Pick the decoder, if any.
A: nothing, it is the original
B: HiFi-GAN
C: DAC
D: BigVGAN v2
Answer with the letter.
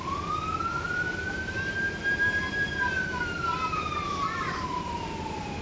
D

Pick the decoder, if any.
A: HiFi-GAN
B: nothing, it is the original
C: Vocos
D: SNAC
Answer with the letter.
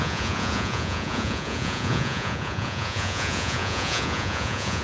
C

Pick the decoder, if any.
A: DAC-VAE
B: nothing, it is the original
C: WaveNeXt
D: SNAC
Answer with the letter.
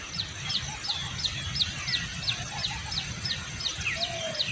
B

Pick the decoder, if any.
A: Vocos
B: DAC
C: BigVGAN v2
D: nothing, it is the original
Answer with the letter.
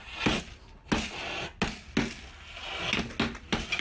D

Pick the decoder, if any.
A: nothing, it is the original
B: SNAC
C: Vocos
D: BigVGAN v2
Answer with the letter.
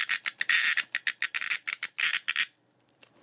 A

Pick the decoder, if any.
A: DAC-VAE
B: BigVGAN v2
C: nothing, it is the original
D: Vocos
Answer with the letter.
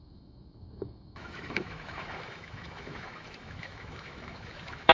A